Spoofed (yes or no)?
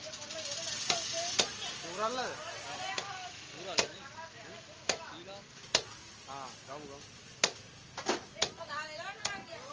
no